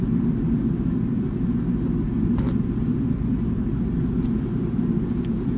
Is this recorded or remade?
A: recorded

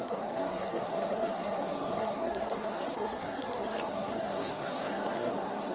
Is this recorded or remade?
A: remade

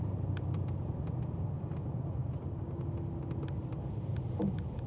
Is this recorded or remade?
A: recorded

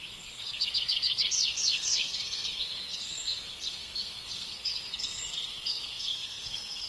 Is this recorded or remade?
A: remade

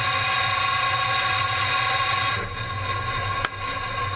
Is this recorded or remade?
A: recorded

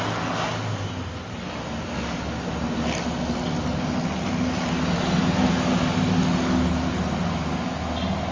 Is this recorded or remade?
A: recorded